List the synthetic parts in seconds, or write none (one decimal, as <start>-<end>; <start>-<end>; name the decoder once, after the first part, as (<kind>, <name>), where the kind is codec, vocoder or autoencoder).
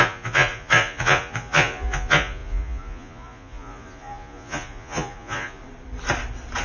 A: 0.0-5.6 (vocoder, Vocos)